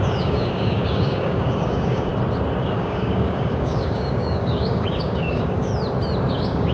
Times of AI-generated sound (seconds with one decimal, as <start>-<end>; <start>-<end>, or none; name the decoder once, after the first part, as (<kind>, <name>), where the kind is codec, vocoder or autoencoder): 0.0-2.1 (codec, DAC); 2.6-5.7; 6.3-6.7